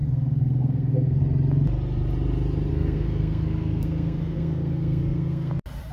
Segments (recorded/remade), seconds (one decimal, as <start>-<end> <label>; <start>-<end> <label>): 0.0-1.2 remade; 1.2-2.7 recorded; 2.7-5.5 remade; 5.5-5.9 recorded